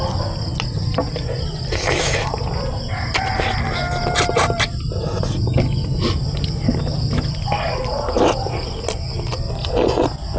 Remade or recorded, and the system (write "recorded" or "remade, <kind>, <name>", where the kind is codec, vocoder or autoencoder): recorded